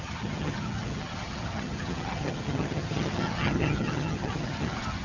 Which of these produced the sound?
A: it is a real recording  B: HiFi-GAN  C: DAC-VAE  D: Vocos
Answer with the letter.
B